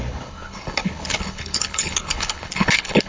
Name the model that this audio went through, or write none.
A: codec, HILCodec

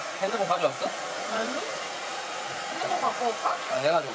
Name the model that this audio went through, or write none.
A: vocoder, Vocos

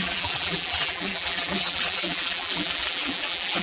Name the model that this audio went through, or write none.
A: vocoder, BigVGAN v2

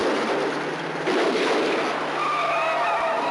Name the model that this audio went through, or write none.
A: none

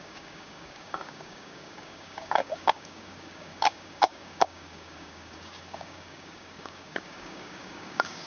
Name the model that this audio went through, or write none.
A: codec, DAC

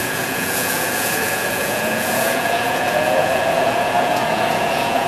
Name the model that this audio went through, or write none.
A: vocoder, Vocos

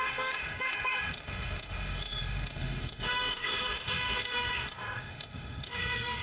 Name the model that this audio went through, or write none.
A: autoencoder, DAC-VAE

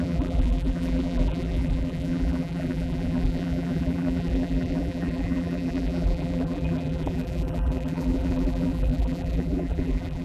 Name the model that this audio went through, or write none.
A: vocoder, BigVGAN v2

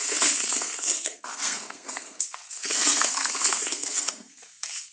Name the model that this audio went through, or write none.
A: codec, SNAC